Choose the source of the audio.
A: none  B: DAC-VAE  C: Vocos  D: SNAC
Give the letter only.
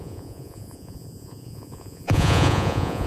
C